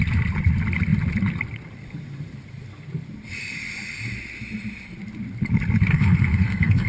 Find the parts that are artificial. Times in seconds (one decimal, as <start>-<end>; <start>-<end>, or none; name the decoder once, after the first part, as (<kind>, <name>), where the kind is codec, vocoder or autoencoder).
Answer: 5.9-6.9 (codec, SNAC)